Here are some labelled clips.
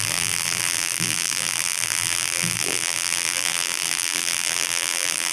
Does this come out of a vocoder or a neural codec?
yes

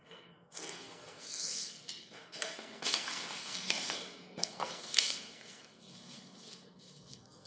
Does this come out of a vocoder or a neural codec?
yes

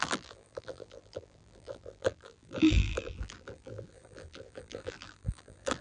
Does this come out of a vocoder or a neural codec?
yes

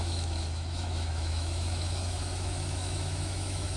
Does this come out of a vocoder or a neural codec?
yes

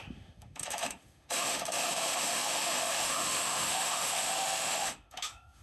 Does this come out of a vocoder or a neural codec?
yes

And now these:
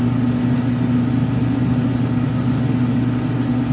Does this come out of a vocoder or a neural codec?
no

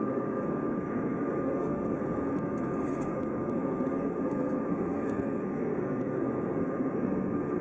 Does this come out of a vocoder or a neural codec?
yes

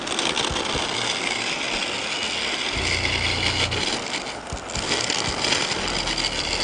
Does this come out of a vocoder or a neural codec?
no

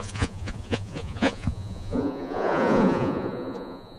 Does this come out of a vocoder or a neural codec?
yes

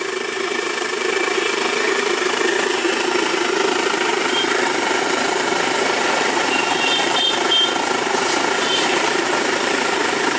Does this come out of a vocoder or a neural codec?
yes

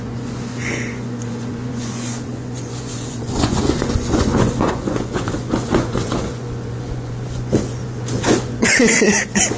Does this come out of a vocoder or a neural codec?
yes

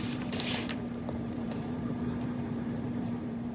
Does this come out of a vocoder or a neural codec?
yes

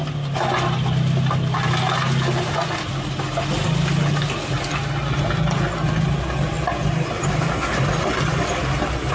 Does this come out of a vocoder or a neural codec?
no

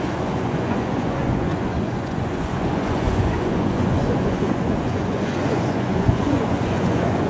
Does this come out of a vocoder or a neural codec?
yes